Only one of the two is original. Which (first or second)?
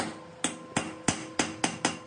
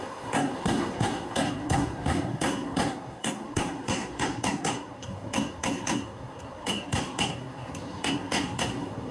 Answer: first